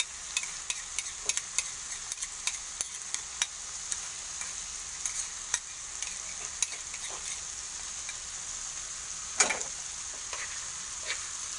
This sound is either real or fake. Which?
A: real